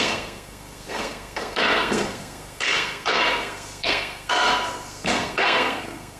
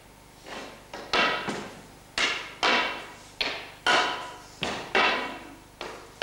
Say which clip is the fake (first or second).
first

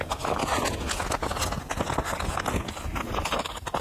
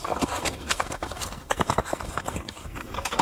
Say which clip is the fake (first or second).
second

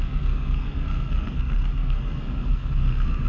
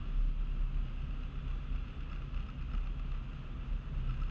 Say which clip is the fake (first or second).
first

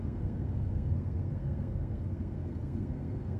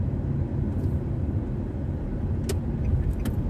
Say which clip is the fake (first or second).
first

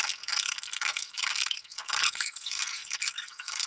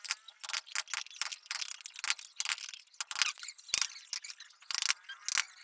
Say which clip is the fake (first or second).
first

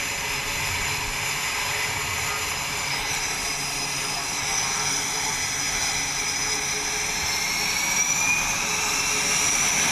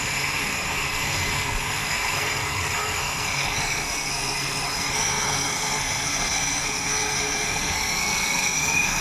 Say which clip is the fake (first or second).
second